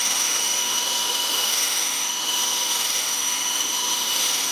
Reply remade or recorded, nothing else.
remade